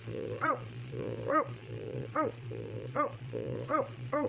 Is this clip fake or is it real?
fake